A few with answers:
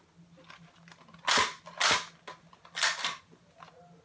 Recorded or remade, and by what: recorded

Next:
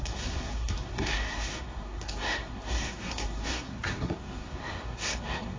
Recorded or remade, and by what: remade, codec, SNAC